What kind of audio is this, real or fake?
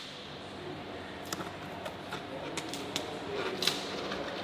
real